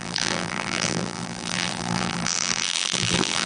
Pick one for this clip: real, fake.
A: fake